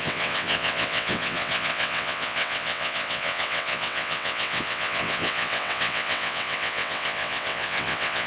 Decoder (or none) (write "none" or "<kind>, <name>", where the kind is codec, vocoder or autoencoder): vocoder, WaveNeXt